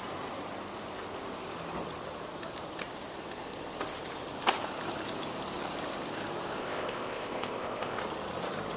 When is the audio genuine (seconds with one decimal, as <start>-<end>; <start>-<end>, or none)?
0.0-6.6; 8.0-8.8